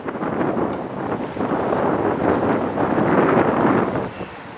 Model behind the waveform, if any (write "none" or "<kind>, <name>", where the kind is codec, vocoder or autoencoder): none